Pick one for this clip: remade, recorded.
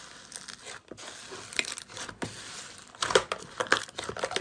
recorded